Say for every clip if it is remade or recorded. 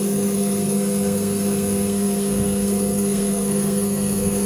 remade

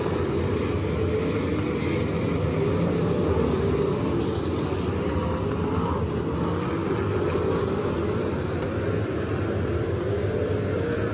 recorded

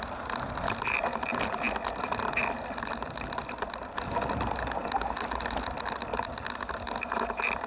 recorded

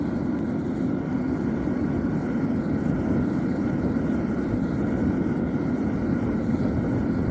recorded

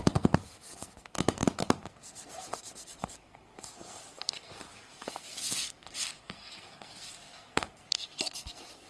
remade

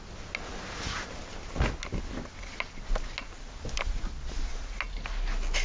recorded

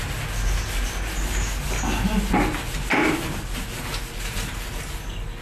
recorded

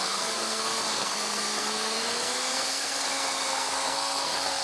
remade